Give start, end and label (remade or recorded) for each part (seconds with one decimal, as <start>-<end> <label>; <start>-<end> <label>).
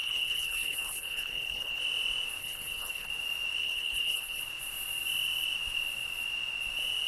0.0-1.8 remade; 1.8-2.4 recorded; 2.4-3.1 remade; 3.1-3.6 recorded; 3.6-4.4 remade; 4.4-7.1 recorded